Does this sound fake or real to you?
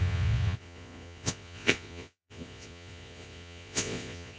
fake